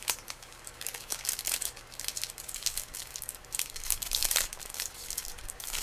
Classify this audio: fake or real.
fake